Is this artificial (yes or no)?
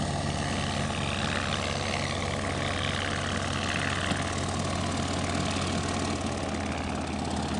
no